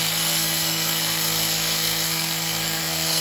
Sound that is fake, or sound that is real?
fake